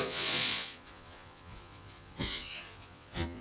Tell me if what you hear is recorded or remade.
remade